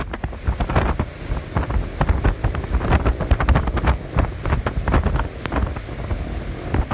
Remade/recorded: recorded